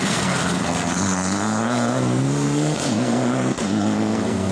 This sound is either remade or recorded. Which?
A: remade